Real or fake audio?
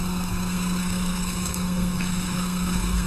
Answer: fake